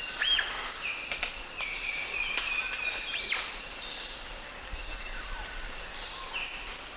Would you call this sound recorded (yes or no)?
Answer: yes